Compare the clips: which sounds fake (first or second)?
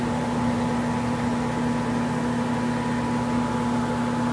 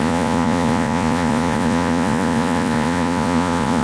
second